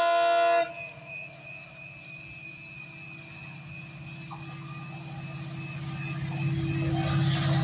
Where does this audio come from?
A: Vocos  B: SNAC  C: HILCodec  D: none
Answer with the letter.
D